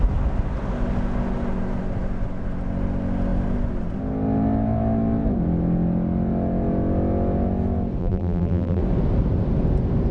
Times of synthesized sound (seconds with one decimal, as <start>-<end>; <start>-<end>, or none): 8.0-8.8